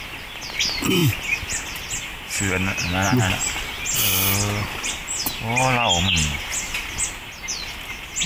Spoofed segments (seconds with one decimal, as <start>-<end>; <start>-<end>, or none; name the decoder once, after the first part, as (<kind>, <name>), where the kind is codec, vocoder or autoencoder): none